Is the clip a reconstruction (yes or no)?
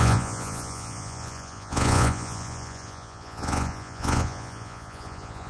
yes